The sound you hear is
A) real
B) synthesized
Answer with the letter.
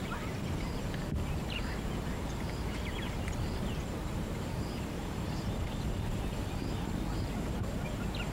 B